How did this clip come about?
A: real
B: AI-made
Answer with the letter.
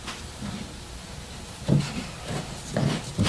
A